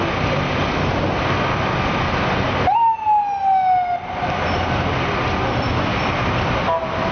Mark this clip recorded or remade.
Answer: recorded